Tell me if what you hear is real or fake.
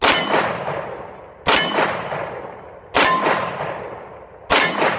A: real